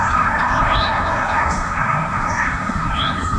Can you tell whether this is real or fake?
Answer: fake